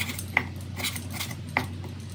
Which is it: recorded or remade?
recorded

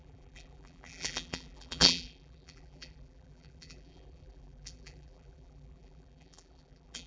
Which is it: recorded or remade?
remade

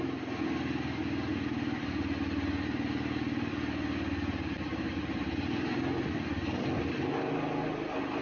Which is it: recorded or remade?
recorded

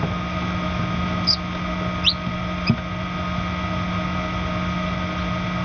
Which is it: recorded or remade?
recorded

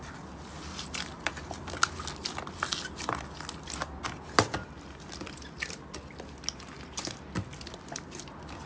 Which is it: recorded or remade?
recorded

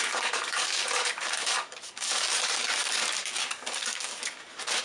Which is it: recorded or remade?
remade